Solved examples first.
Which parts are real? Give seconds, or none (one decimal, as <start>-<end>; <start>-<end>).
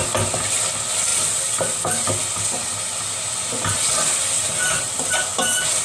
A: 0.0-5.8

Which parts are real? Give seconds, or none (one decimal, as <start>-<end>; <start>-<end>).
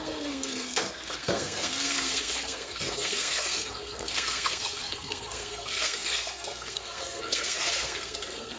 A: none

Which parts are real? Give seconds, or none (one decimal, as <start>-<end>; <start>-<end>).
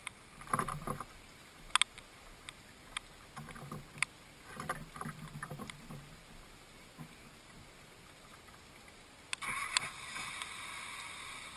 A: 0.0-11.6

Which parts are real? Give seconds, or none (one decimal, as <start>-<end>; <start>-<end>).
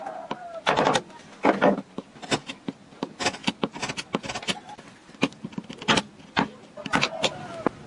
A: 0.0-7.9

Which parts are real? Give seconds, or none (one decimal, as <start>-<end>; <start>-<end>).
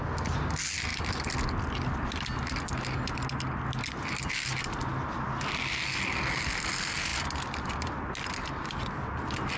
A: 0.0-9.6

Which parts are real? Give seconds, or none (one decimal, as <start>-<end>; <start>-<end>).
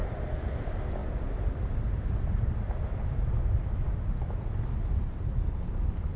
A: 0.0-6.2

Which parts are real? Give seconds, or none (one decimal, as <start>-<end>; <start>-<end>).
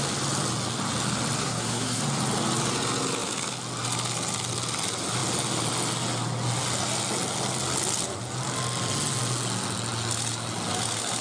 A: 0.0-1.4; 2.0-11.2